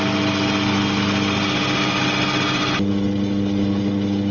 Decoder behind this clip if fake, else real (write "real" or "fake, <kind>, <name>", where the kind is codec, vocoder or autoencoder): real